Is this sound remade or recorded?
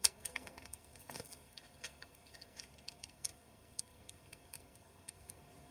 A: remade